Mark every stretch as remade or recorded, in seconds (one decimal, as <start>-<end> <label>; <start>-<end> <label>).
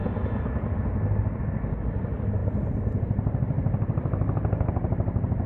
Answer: 0.0-5.5 recorded